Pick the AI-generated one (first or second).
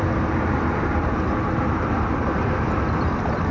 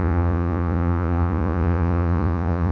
second